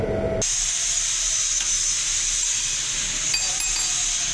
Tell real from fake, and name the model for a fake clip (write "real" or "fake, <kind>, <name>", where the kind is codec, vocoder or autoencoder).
real